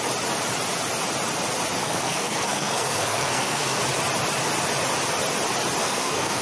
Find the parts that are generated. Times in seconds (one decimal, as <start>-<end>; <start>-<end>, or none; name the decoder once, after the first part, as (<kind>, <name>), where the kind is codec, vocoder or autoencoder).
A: 1.8-3.8 (codec, SNAC); 5.8-6.4